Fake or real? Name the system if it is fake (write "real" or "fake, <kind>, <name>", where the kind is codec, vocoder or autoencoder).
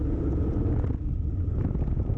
real